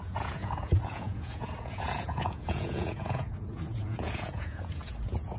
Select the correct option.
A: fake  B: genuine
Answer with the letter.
A